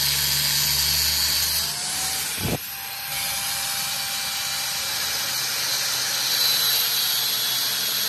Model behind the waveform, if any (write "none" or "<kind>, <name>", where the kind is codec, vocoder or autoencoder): none